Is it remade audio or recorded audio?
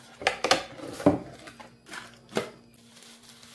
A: recorded